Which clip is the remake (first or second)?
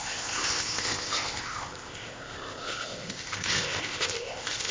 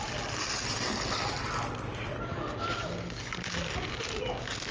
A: first